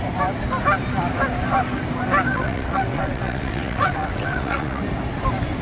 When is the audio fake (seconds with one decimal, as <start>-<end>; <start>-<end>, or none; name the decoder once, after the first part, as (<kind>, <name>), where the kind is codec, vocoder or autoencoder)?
2.3-4.8 (vocoder, WaveNeXt)